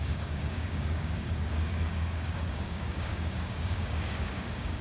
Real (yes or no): no